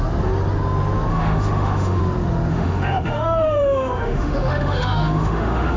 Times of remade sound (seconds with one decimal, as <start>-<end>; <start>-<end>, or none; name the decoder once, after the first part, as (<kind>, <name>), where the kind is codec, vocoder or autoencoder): 1.1-2.0 (autoencoder, DAC-VAE); 2.5-5.8